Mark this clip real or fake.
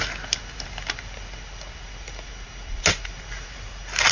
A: real